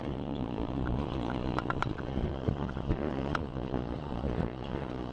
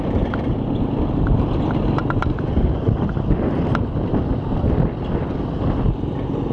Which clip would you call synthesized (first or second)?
first